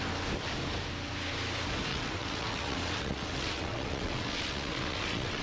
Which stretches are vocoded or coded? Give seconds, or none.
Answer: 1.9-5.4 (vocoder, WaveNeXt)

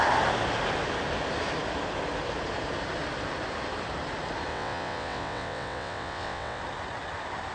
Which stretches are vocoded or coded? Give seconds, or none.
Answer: 4.5-6.6 (vocoder, WaveNeXt)

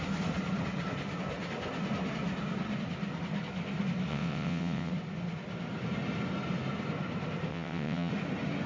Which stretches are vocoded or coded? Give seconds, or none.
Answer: 4.1-4.9 (vocoder, WaveNeXt); 7.5-8.1

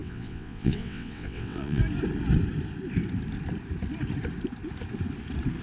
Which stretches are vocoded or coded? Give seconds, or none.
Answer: 0.0-1.8 (vocoder, WaveNeXt)

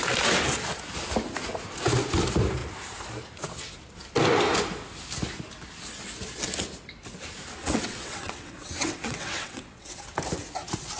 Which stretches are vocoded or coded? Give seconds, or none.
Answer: 7.6-10.0 (vocoder, WaveNeXt)

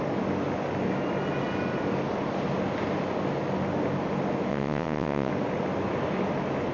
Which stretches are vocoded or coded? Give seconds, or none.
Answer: 4.5-5.3 (vocoder, WaveNeXt)

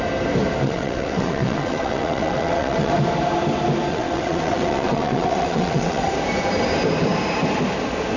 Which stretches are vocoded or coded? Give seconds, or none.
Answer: 0.6-2.9 (vocoder, WaveNeXt); 3.9-6.1

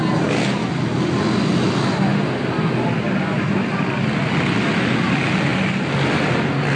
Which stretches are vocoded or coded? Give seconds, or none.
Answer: none